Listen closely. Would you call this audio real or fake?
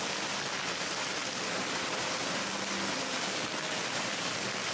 real